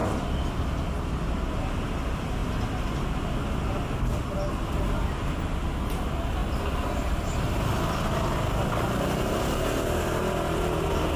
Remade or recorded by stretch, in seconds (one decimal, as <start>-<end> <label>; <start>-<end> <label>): 0.0-11.2 recorded